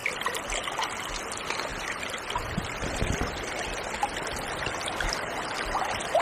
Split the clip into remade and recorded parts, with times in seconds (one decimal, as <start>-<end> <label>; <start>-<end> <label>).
0.0-1.2 remade; 1.2-1.7 recorded; 1.7-5.4 remade; 5.4-6.2 recorded